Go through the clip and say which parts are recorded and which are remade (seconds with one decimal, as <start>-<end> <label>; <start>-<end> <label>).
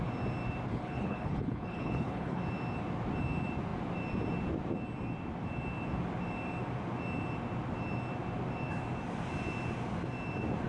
0.0-0.7 recorded; 0.7-2.4 remade; 2.4-10.7 recorded